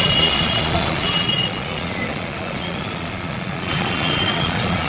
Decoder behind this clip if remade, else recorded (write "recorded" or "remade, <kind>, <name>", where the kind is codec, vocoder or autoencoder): remade, vocoder, Vocos